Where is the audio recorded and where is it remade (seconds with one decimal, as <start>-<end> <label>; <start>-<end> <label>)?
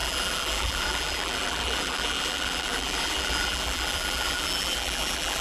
0.0-5.4 remade